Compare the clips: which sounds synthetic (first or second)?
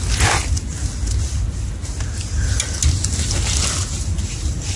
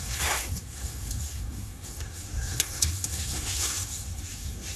second